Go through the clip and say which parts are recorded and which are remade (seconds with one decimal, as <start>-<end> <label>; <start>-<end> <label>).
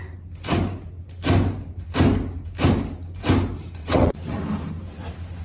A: 0.0-3.8 recorded; 3.8-4.4 remade; 4.4-5.4 recorded